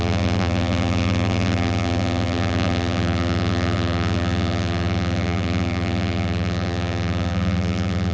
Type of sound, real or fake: fake